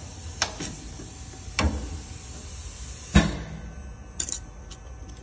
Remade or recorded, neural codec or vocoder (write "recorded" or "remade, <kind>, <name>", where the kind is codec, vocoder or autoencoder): recorded